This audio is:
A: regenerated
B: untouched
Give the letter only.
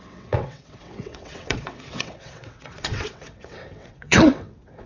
A